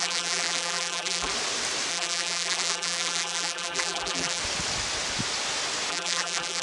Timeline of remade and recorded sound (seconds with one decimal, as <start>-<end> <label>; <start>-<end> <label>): 0.0-1.3 remade; 1.3-1.9 recorded; 1.9-4.4 remade; 4.4-5.9 recorded; 5.9-6.6 remade